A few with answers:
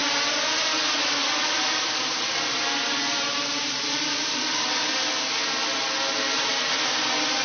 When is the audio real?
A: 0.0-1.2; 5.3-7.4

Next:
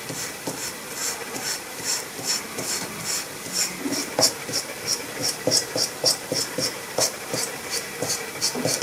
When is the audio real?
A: 0.0-1.0; 2.4-5.2; 8.1-8.8

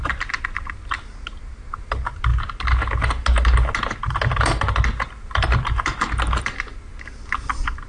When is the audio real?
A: 0.0-7.9

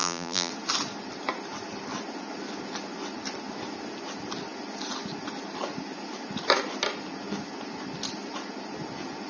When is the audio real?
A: 0.5-9.3

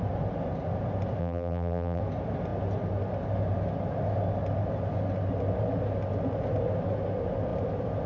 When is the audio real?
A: 0.0-1.2; 2.0-8.1

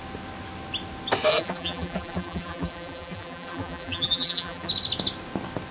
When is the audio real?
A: 0.0-1.3; 4.7-5.7

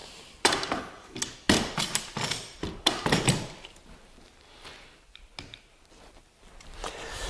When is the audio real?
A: 0.8-7.3

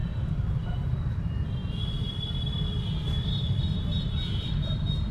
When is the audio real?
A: 0.0-5.1